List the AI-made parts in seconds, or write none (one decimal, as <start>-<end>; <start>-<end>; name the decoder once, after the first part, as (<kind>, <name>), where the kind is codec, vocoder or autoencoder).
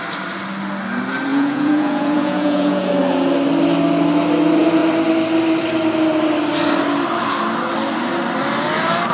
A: 1.3-2.9 (vocoder, Vocos)